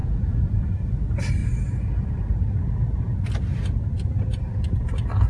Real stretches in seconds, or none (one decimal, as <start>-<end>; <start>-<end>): 0.6-5.3